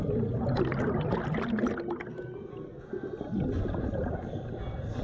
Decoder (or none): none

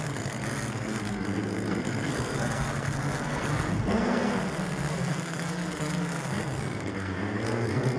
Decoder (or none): codec, SNAC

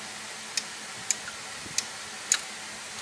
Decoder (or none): none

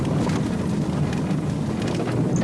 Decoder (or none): none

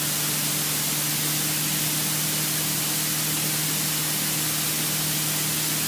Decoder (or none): none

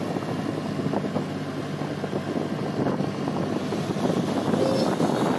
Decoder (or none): none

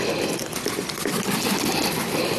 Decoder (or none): none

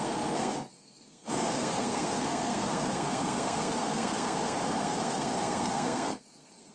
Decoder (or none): codec, SNAC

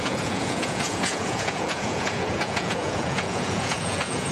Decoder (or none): vocoder, Vocos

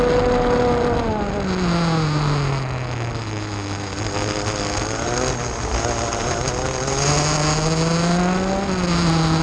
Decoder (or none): none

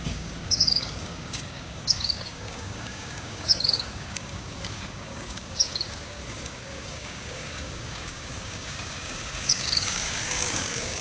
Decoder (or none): codec, DAC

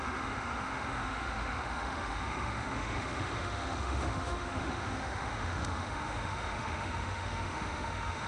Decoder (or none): autoencoder, DAC-VAE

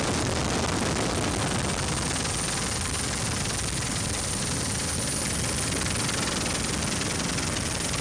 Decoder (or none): none